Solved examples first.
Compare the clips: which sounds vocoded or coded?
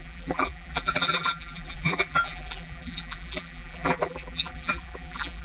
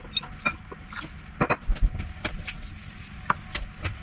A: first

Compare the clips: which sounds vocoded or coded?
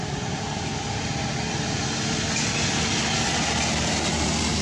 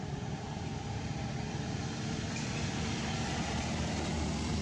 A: second